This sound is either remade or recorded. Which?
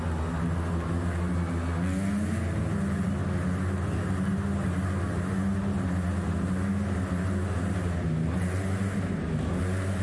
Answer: recorded